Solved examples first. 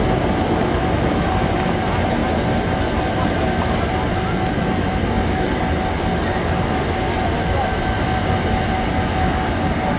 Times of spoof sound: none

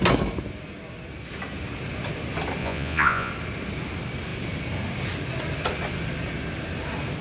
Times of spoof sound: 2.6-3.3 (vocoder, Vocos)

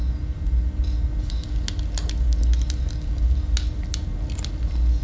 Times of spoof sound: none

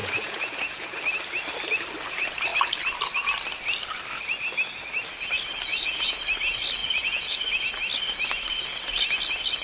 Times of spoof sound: 0.0-1.0 (vocoder, Vocos); 5.7-6.2; 6.8-7.4

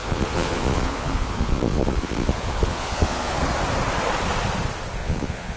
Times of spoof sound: 0.0-3.4 (vocoder, Vocos); 5.0-5.6

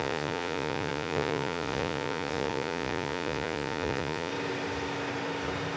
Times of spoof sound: 0.0-4.3 (vocoder, Vocos)